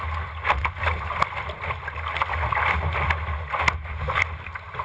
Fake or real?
real